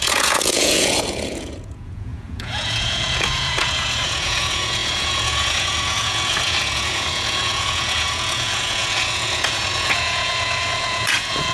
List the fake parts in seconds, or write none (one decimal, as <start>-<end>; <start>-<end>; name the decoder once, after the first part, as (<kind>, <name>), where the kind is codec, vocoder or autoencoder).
0.0-11.5 (vocoder, Vocos)